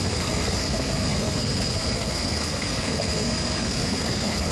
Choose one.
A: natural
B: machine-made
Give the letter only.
B